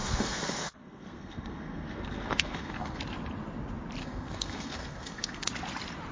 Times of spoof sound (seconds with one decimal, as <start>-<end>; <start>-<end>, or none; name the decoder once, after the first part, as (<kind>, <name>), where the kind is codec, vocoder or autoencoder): 0.0-3.0 (codec, SNAC); 4.0-5.5